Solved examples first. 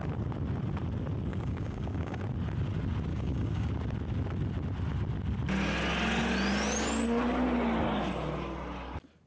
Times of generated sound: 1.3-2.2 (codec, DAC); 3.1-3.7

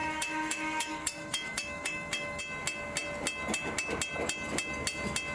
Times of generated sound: 0.0-2.4 (autoencoder, DAC-VAE)

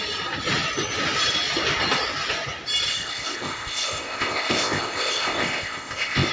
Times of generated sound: 2.9-6.3 (codec, ZipCodec)

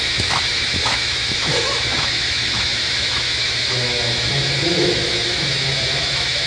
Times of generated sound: 0.0-6.5 (autoencoder, DAC-VAE)

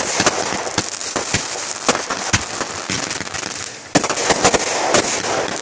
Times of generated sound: 1.0-1.7 (vocoder, BigVGAN v2)